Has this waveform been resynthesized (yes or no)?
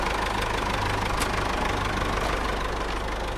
no